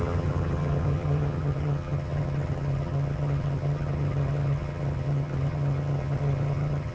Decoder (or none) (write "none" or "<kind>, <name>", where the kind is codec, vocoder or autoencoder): vocoder, HiFi-GAN